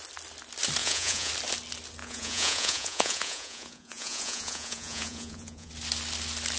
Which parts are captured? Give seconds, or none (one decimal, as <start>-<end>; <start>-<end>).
0.0-0.8; 1.3-2.0; 5.7-6.6